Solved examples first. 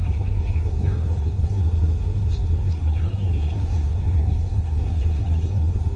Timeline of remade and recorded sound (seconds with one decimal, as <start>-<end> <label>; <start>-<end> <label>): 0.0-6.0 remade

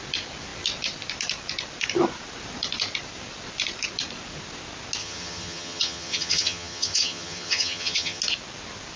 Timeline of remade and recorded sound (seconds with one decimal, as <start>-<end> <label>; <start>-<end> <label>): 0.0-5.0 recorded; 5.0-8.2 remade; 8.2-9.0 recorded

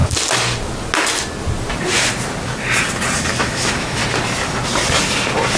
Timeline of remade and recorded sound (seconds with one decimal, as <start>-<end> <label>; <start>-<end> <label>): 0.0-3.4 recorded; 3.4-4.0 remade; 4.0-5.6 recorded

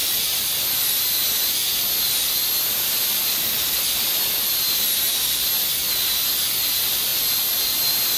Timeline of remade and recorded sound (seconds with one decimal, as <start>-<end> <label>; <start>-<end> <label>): 0.0-8.2 recorded

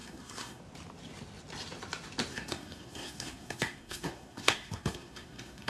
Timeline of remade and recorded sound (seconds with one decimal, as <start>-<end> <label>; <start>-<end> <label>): 0.0-0.6 remade; 0.6-2.3 recorded; 2.3-5.7 remade